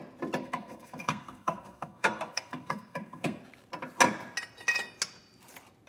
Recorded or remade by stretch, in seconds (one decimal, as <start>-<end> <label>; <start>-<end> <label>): 0.0-0.4 recorded; 0.4-3.4 remade; 3.4-5.9 recorded